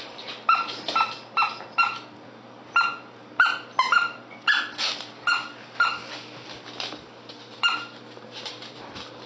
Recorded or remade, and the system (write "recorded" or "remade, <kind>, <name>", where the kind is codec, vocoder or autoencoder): recorded